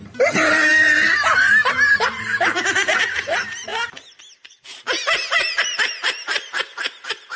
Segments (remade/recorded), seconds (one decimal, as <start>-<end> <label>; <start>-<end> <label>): 0.0-3.7 remade; 3.7-5.0 recorded; 5.0-7.4 remade